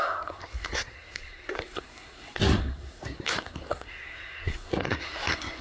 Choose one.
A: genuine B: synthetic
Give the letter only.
B